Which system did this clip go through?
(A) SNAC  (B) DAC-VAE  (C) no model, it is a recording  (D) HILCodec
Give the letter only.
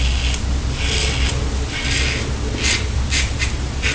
C